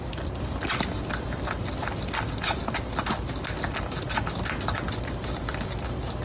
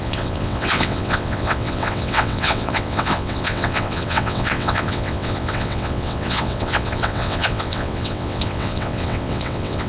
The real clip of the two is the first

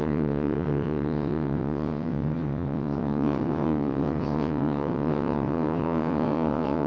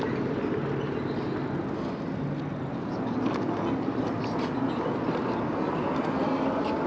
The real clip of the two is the second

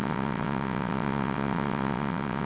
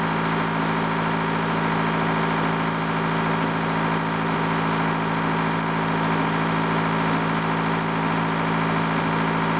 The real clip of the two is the second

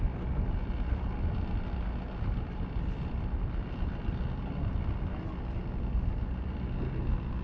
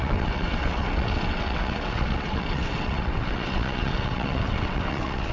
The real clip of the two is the first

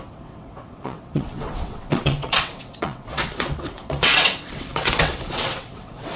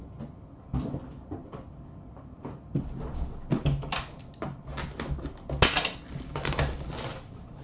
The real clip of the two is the second